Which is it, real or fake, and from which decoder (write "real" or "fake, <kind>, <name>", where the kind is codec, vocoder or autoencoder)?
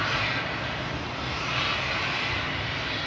real